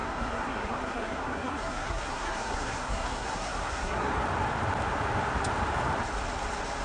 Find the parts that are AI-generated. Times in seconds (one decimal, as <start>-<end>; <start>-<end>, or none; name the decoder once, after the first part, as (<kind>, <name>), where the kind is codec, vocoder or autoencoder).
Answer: 0.0-4.1 (codec, SNAC)

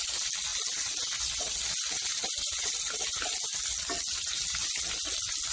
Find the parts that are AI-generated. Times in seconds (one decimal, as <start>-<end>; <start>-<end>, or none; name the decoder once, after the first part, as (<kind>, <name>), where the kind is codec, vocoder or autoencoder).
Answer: none

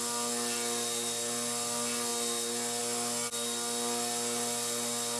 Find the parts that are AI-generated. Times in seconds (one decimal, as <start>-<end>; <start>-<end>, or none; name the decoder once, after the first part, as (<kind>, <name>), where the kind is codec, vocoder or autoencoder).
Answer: none

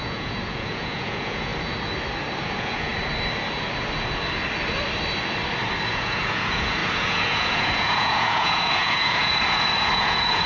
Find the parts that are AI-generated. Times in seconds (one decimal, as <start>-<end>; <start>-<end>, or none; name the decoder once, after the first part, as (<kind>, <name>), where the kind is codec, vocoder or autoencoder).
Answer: 0.0-1.5 (vocoder, Vocos); 2.4-2.9; 5.9-10.5

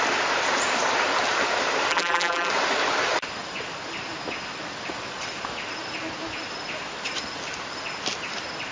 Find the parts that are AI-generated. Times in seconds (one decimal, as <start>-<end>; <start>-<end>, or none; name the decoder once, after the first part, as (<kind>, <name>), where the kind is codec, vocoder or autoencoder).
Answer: 1.9-2.5 (vocoder, BigVGAN v2)

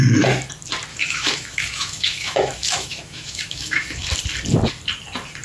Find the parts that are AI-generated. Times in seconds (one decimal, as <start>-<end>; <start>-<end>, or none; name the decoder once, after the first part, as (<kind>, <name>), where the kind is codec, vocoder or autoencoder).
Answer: 0.9-4.1 (autoencoder, DAC-VAE)

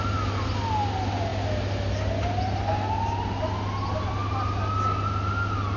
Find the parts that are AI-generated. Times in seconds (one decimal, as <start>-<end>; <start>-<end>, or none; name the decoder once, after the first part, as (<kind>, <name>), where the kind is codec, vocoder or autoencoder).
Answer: none

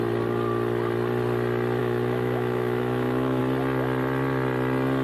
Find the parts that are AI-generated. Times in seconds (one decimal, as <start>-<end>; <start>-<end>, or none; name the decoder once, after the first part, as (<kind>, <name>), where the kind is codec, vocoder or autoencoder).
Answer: 1.8-3.4 (autoencoder, DAC-VAE)